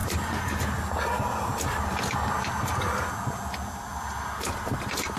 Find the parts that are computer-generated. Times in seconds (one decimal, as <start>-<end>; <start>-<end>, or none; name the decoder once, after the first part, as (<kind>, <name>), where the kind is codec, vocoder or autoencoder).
none